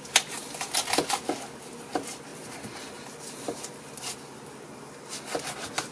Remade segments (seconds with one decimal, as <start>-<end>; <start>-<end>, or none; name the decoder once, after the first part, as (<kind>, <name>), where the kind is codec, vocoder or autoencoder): none